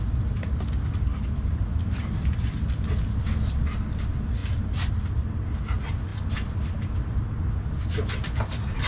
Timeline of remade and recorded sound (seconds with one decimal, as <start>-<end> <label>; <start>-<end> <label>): 0.0-8.9 recorded